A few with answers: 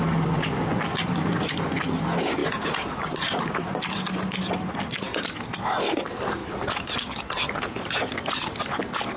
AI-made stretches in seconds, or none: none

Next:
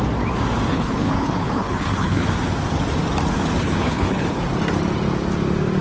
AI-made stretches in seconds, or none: 0.7-2.3 (codec, HILCodec); 3.6-4.4

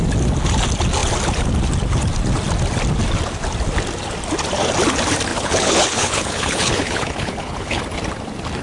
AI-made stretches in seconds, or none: 5.3-7.8 (codec, HILCodec)